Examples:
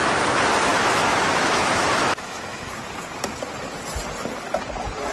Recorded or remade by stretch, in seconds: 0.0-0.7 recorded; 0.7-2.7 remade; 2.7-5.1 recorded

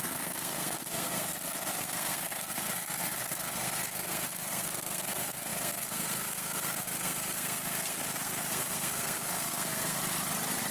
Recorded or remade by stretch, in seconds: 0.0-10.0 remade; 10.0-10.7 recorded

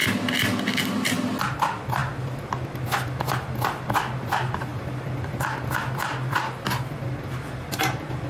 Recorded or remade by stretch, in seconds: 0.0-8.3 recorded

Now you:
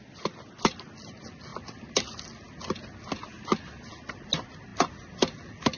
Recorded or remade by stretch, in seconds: 0.0-5.8 recorded

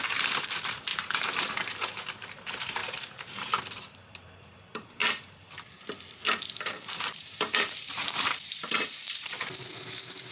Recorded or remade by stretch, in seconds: 0.0-0.9 remade; 0.9-2.1 recorded; 2.1-5.0 remade; 5.0-6.5 recorded; 6.5-10.3 remade